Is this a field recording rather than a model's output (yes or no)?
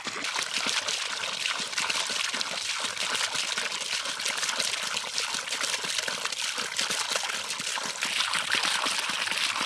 yes